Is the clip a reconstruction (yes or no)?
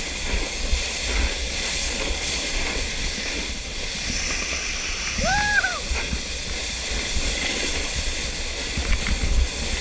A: no